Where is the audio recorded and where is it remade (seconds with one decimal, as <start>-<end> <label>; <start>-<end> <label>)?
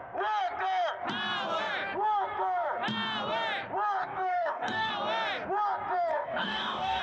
0.0-4.0 recorded; 4.0-4.9 remade; 4.9-6.1 recorded; 6.1-7.0 remade